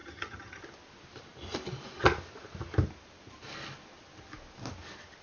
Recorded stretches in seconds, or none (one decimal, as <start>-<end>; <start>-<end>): 0.6-5.2